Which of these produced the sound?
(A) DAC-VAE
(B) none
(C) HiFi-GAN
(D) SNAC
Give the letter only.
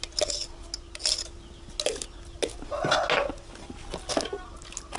B